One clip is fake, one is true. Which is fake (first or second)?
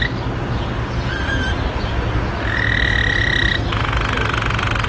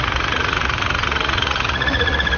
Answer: second